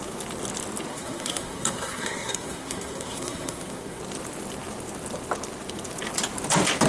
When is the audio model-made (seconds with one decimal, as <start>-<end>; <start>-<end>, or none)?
0.9-4.0